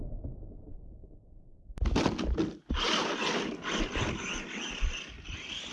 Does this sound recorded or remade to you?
recorded